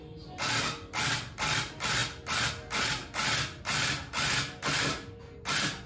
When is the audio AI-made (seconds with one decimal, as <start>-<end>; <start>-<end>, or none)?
none